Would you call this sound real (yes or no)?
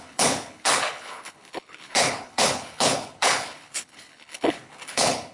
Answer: no